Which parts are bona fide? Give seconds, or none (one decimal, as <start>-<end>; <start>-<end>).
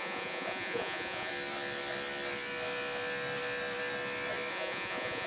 1.3-4.5